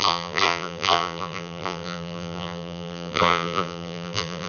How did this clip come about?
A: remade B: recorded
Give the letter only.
A